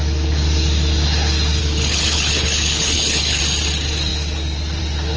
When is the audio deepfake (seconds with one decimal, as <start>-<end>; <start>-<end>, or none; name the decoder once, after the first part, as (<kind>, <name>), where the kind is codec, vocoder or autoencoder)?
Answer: 1.6-3.4 (codec, HILCodec)

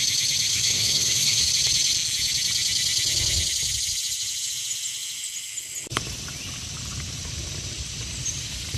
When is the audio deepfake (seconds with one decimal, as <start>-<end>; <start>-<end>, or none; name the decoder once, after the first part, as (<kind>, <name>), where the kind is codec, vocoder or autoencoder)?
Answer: 0.5-1.5 (codec, SNAC)

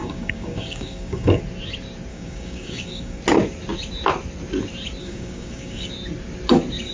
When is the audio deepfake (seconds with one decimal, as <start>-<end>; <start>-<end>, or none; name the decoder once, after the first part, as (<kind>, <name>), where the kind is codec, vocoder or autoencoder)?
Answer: 0.0-1.4 (codec, DAC); 2.1-3.2; 5.0-5.9

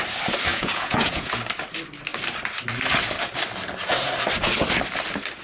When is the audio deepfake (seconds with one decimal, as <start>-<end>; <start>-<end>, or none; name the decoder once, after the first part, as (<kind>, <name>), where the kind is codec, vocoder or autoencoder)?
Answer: 0.5-1.3 (vocoder, Vocos)

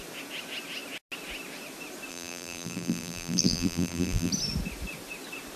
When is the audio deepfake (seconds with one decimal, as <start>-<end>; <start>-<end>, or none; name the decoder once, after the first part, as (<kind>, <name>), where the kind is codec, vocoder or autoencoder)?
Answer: 2.1-4.3 (vocoder, BigVGAN v2)

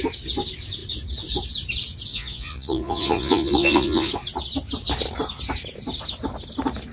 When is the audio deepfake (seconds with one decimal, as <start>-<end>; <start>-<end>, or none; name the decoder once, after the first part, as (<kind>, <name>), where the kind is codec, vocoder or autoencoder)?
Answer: 2.1-4.1 (vocoder, Vocos)

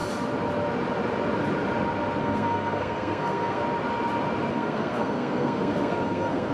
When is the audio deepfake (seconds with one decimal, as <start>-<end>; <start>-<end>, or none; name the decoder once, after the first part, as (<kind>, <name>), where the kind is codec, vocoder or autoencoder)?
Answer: 2.2-3.6 (codec, SNAC); 4.5-6.5